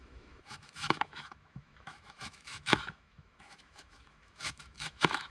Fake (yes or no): yes